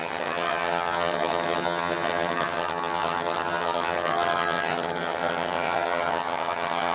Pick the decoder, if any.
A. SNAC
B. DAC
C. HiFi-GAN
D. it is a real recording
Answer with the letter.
C